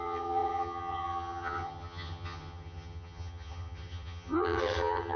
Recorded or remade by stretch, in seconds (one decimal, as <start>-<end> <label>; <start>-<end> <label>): 0.0-5.2 remade